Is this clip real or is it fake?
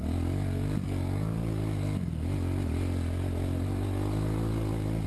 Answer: real